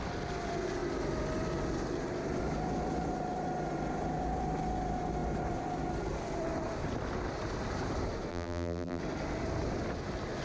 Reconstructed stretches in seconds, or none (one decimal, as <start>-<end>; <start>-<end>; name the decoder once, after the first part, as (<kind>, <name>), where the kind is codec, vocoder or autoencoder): 8.3-9.0 (vocoder, BigVGAN v2)